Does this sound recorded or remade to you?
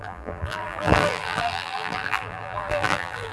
remade